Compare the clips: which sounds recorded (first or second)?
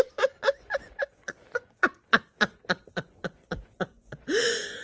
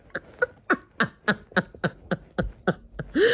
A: second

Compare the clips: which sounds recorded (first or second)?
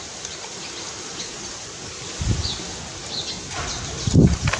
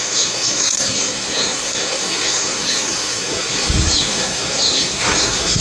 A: first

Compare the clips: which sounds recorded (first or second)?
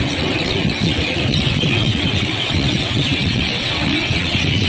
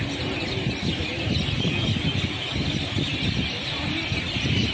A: second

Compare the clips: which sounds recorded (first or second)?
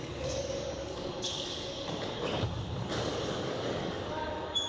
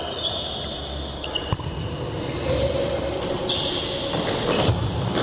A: second